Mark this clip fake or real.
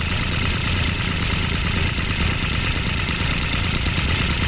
fake